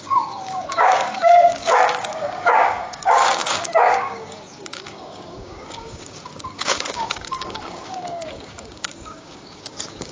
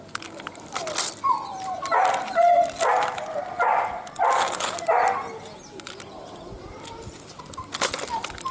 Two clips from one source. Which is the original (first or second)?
second